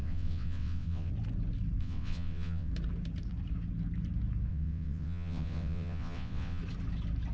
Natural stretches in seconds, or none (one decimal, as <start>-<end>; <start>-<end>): 1.1-1.8; 2.7-4.5; 6.6-7.3